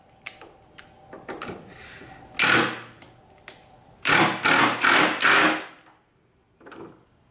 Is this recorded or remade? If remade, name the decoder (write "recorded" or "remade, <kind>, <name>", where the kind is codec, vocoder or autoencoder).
recorded